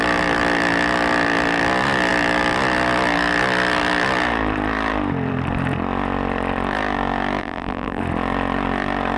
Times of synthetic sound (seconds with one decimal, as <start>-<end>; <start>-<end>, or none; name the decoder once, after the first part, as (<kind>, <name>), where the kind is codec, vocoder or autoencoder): 7.4-8.0 (vocoder, BigVGAN v2)